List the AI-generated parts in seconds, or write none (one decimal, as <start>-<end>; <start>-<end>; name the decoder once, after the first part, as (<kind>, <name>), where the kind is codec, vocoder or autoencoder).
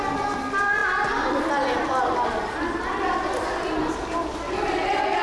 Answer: none